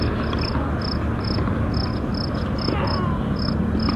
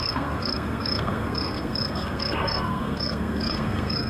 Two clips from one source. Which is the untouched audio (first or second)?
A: first